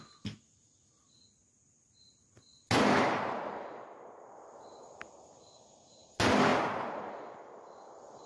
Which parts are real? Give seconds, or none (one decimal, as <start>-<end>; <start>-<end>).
0.0-8.3